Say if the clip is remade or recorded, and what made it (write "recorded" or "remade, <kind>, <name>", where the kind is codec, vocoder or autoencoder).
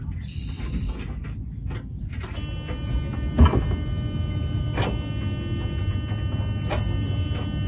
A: recorded